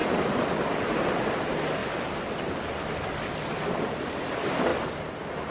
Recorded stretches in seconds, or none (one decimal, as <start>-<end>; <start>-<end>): 0.0-5.5